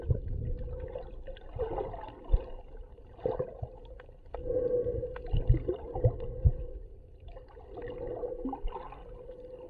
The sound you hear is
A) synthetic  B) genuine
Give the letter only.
B